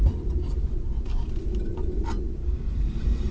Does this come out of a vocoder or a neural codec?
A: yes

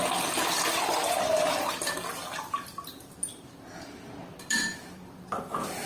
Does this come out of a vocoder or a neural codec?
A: no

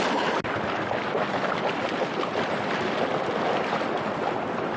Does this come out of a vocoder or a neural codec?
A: no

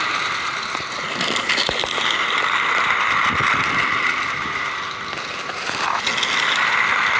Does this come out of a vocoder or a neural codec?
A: no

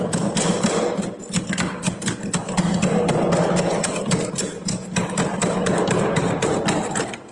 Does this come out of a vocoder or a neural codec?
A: no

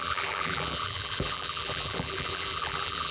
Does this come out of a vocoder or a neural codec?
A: yes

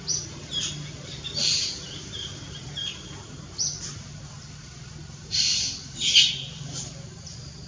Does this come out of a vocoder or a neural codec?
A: yes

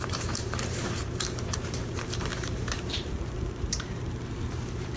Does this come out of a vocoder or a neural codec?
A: yes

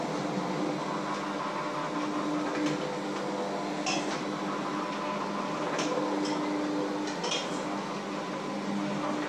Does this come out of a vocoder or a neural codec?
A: no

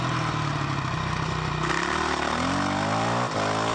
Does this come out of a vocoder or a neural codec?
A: no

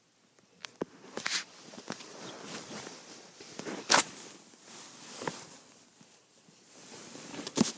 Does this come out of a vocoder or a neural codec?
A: yes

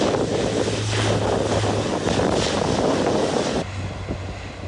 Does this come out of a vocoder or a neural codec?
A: no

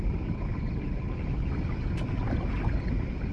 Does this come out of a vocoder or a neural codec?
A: no